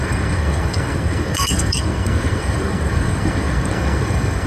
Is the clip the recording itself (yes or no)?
no